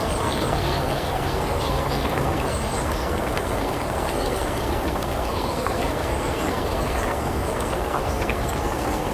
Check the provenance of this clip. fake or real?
fake